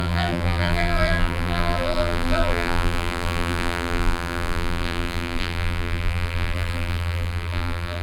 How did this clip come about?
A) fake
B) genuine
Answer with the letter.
A